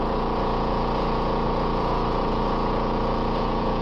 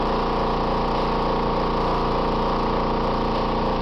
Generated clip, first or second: first